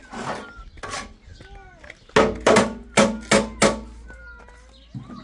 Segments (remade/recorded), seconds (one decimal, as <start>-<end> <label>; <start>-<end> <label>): 0.0-5.2 recorded